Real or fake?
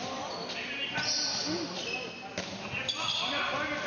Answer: real